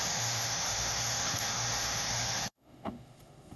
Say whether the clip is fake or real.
fake